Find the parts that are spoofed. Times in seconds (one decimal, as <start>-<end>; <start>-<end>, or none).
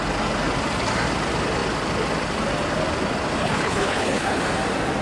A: 3.4-4.4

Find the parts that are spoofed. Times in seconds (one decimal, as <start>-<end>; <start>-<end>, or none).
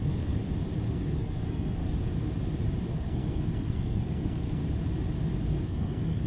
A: 0.0-0.4; 0.9-1.8; 2.9-4.6; 5.5-6.3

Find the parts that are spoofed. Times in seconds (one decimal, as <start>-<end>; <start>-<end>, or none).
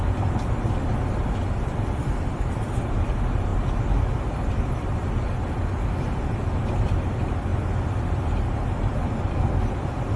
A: none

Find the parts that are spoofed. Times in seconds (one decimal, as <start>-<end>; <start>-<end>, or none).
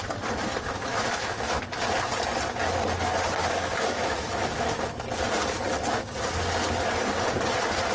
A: 0.9-1.6; 3.4-4.8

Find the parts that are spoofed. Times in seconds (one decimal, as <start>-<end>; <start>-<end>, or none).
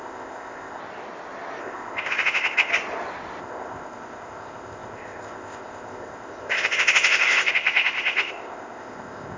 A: 0.0-0.8; 1.6-2.7; 3.4-9.4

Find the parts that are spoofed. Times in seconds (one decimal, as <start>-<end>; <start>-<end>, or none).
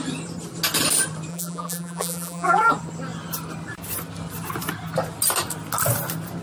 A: 1.3-2.7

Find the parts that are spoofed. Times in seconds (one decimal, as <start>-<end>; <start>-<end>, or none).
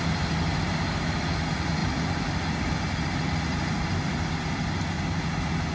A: none